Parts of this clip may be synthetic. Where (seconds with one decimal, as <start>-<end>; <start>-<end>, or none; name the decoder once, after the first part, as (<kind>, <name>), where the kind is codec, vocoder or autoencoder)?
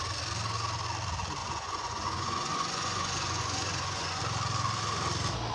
1.4-4.2 (vocoder, Vocos)